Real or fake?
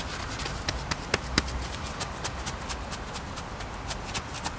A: real